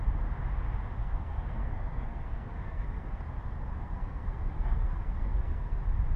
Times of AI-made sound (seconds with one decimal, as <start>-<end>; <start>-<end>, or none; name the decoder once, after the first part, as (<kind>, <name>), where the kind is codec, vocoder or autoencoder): 1.0-3.2 (codec, SNAC); 3.7-5.8